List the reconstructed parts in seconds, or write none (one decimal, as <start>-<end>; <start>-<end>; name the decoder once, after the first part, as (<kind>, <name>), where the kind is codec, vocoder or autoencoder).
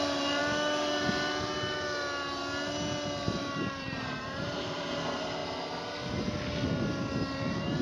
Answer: 0.0-0.4 (vocoder, BigVGAN v2); 3.4-5.4; 7.1-7.8